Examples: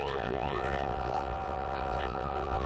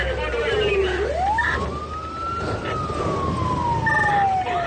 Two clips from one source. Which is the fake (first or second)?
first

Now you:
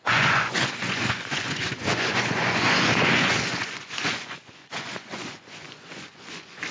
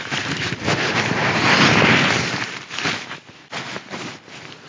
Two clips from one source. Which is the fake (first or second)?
first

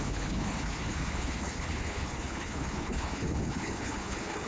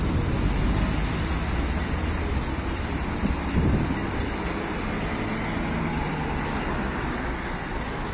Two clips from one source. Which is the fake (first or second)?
first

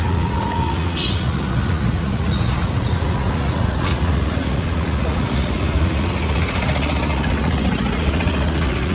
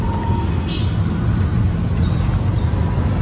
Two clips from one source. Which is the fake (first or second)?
first